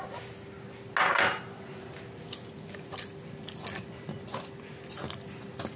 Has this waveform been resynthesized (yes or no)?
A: no